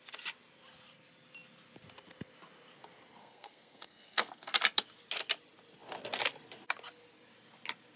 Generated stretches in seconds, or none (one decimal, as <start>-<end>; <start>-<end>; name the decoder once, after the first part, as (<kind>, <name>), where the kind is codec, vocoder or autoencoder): 3.2-4.5 (codec, SNAC)